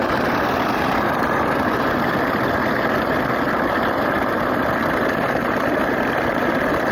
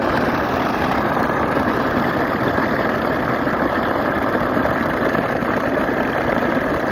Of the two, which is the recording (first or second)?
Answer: first